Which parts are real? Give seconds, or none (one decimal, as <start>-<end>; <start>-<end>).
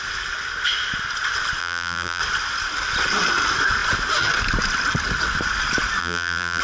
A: 0.0-1.6; 2.2-6.0